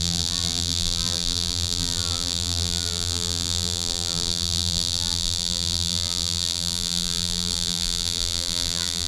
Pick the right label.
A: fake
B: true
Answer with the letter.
A